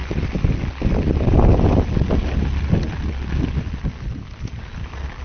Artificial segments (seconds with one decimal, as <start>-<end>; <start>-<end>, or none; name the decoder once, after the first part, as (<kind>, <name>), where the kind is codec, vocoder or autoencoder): none